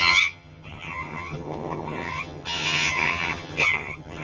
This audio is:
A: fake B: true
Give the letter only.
A